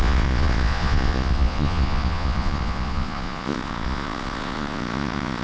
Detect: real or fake fake